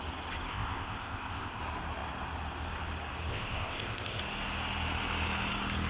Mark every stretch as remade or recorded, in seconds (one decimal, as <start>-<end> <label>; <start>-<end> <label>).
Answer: 0.0-0.5 recorded; 0.5-1.6 remade; 1.6-3.3 recorded; 3.3-4.2 remade; 4.2-5.9 recorded